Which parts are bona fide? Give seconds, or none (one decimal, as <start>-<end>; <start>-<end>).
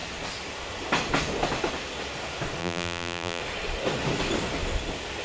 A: 0.0-2.6; 3.4-5.2